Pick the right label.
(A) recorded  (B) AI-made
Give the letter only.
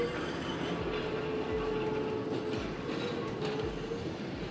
A